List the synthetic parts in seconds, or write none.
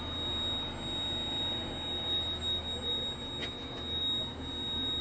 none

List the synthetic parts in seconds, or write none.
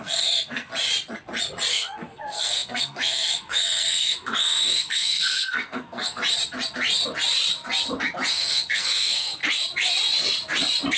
0.0-0.7 (codec, SNAC); 1.7-6.2; 8.3-9.4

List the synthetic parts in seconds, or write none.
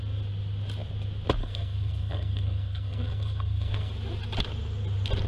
1.4-3.9 (codec, SNAC)